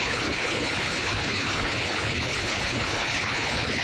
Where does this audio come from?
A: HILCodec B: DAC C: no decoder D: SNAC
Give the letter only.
A